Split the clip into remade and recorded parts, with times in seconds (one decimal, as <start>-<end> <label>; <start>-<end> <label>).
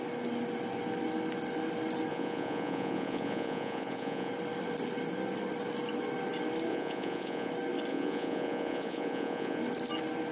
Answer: 0.0-2.1 recorded; 2.1-4.3 remade; 4.3-6.7 recorded; 6.7-7.5 remade; 7.5-7.9 recorded; 7.9-9.6 remade; 9.6-10.3 recorded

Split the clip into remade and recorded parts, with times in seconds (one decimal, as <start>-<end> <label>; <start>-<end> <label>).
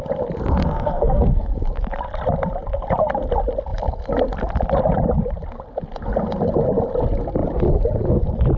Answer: 0.0-0.6 recorded; 0.6-1.5 remade; 1.5-8.6 recorded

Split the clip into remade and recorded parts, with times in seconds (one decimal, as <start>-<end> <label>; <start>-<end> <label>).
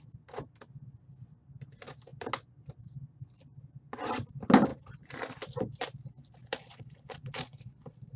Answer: 0.0-6.4 recorded; 6.4-8.2 remade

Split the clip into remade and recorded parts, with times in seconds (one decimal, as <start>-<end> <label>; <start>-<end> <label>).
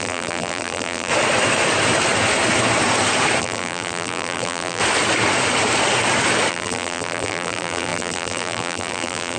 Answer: 0.0-1.1 remade; 1.1-3.4 recorded; 3.4-4.8 remade; 4.8-6.5 recorded; 6.5-9.4 remade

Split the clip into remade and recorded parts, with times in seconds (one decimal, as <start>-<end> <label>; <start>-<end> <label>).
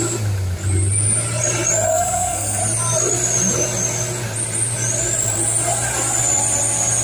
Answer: 0.0-1.9 recorded; 1.9-2.6 remade; 2.6-7.0 recorded